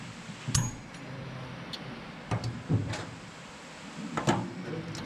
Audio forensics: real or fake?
real